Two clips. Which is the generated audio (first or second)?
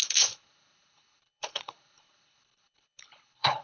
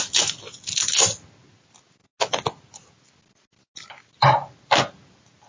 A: first